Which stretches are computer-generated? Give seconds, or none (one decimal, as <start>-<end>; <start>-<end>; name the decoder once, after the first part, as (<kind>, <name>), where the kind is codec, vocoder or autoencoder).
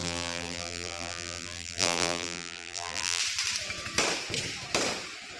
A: 0.0-3.2 (vocoder, BigVGAN v2)